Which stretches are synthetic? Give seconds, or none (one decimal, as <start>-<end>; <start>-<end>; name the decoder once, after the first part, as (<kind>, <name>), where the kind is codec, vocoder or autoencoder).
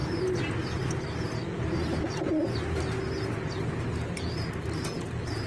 none